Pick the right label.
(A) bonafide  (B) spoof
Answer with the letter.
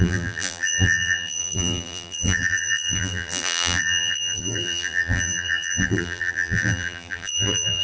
B